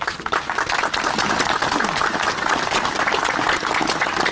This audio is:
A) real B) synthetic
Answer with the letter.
A